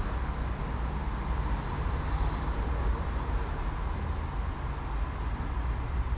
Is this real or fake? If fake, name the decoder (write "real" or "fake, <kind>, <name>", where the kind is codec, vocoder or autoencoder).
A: real